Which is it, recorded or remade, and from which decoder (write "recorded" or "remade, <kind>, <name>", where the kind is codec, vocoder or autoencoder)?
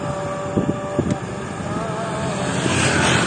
recorded